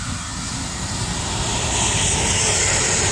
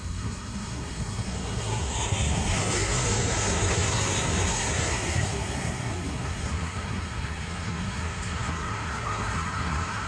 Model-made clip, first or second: second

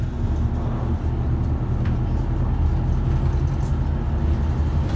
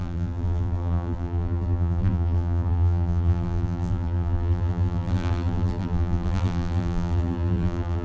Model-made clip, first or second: second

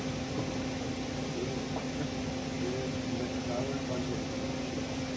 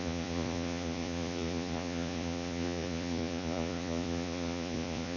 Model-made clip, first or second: second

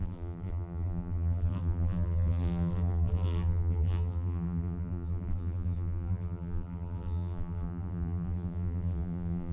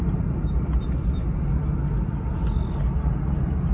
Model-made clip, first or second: first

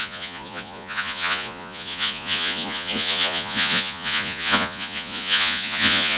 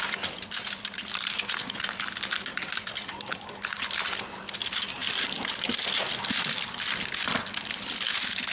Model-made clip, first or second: first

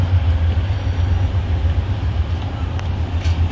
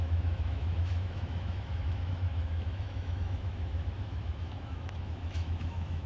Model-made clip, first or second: second